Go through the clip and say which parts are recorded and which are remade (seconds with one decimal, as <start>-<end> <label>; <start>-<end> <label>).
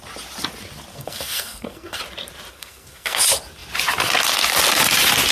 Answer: 0.0-0.9 recorded; 0.9-2.0 remade; 2.0-2.5 recorded; 2.5-3.2 remade; 3.2-5.3 recorded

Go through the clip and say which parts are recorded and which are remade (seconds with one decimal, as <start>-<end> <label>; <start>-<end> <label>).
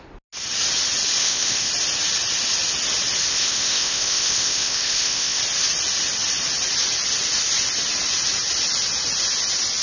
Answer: 0.0-1.2 recorded; 1.2-1.7 remade; 1.7-3.3 recorded; 3.3-5.4 remade; 5.4-9.8 recorded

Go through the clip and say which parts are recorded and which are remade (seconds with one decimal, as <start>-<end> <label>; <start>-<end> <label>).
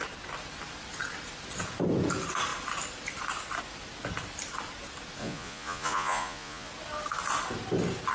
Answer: 0.0-5.2 recorded; 5.2-6.7 remade; 6.7-8.1 recorded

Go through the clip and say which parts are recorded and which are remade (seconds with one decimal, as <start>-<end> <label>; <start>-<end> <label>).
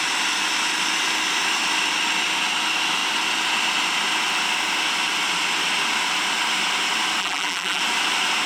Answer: 0.0-7.2 recorded; 7.2-7.8 remade; 7.8-8.5 recorded